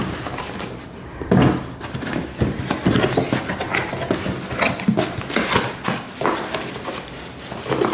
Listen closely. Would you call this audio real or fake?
real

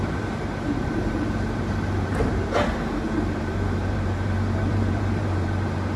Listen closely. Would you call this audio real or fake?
fake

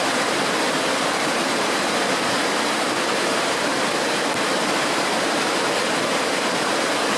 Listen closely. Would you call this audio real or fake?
fake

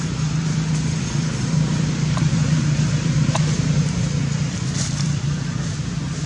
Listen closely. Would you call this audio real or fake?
fake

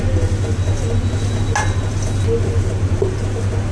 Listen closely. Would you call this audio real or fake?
real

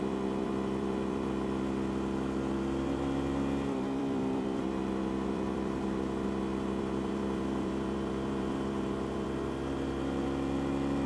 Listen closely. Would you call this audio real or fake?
fake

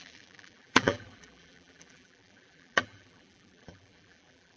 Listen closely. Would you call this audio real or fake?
fake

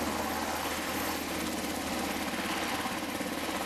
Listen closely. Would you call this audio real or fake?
real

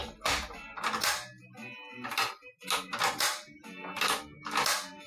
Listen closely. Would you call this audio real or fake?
real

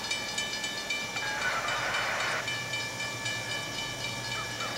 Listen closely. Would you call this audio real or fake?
real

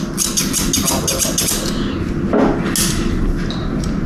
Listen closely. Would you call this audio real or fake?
real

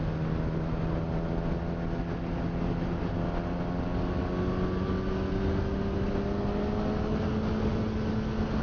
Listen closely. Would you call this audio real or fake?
real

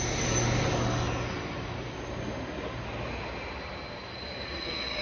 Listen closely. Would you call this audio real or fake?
real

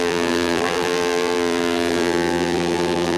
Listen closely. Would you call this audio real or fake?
fake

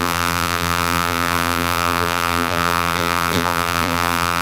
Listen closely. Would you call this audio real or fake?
fake